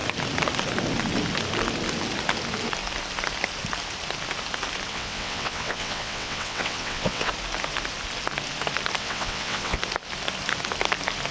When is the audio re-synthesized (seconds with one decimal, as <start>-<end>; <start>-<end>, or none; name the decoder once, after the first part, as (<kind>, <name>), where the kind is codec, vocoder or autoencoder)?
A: 4.9-7.3 (vocoder, WaveNeXt); 9.0-9.8